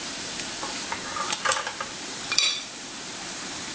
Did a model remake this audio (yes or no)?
yes